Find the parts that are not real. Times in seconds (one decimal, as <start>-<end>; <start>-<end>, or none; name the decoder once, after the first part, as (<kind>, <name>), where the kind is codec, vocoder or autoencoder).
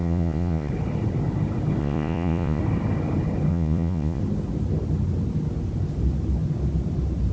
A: 0.0-0.7 (vocoder, Vocos); 1.8-2.6; 3.5-4.2